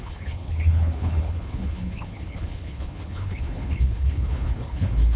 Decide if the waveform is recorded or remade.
remade